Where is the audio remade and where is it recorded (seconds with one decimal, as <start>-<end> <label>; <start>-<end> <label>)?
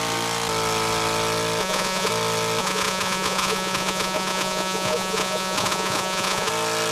0.0-1.6 recorded; 1.6-2.1 remade; 2.1-2.6 recorded; 2.6-6.5 remade; 6.5-6.9 recorded